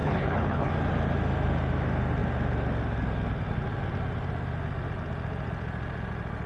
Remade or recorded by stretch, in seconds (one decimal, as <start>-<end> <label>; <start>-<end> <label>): 0.0-0.7 remade; 0.7-6.5 recorded